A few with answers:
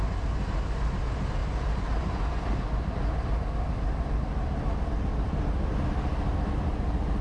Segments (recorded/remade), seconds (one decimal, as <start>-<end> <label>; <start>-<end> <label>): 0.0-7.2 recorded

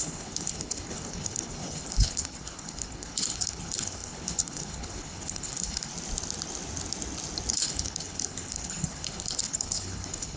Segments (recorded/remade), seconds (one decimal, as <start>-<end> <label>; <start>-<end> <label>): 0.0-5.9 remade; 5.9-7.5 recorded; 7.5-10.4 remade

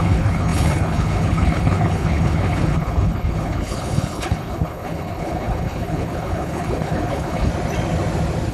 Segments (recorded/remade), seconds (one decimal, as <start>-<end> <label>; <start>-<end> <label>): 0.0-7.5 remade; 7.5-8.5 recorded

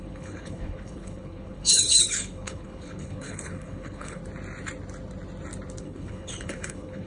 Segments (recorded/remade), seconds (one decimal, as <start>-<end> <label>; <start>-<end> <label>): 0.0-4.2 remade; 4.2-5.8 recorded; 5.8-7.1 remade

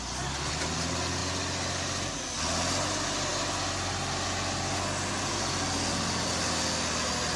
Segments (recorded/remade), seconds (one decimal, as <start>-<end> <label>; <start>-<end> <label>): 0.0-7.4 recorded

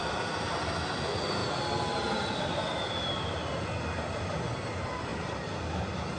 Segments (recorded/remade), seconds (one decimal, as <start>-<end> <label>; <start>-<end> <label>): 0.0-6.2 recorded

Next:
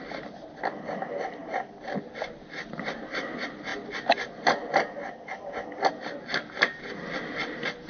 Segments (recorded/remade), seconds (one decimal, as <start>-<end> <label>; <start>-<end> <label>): 0.0-7.9 recorded